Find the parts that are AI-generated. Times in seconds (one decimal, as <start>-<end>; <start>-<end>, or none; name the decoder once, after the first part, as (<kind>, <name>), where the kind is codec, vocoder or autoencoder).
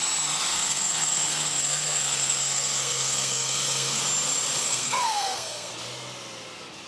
0.5-4.0 (codec, SNAC); 4.6-5.7